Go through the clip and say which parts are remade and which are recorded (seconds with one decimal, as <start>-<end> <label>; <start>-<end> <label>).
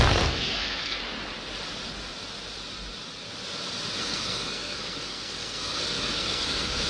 0.0-1.0 remade; 1.0-4.0 recorded; 4.0-6.9 remade